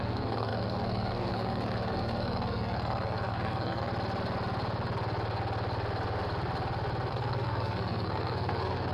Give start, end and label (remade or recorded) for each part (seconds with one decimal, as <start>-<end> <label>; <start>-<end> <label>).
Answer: 0.0-3.9 remade; 3.9-7.1 recorded; 7.1-8.9 remade